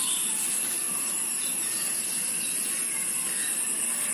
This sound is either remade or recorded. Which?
recorded